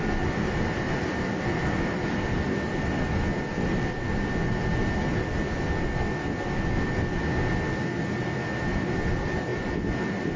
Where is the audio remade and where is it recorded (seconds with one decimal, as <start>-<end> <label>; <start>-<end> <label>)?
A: 0.0-3.3 remade; 3.3-7.9 recorded; 7.9-10.4 remade